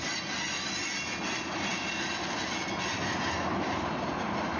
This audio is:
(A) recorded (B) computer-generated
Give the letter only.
A